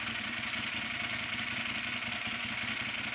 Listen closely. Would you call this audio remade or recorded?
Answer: recorded